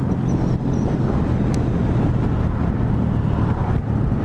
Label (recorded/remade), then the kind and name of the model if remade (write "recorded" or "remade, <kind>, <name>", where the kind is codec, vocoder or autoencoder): recorded